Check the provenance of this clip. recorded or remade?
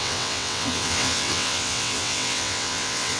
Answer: remade